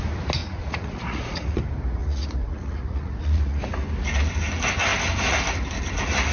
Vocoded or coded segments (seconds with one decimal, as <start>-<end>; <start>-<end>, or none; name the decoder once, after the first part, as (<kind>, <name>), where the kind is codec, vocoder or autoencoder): 0.4-1.6 (vocoder, Vocos); 2.0-3.6